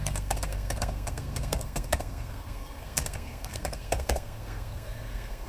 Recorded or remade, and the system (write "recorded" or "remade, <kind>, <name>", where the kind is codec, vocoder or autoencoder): remade, codec, SNAC